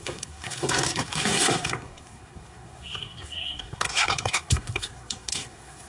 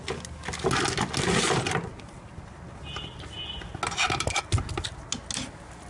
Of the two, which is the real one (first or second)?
second